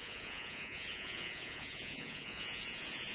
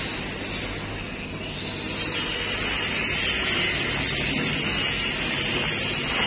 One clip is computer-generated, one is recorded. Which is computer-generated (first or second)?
first